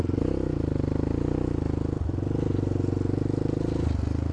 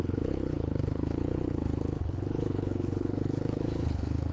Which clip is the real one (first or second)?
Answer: first